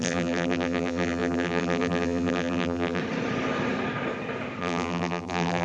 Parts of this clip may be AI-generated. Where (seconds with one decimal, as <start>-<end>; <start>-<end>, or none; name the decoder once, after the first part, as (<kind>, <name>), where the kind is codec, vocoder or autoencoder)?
0.0-3.0 (vocoder, BigVGAN v2); 4.6-5.6